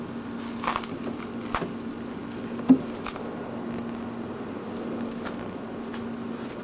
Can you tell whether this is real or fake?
real